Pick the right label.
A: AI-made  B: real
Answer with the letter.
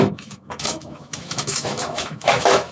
A